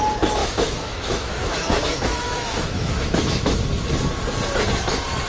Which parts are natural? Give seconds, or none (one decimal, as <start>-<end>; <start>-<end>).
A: 0.0-0.4; 3.6-5.3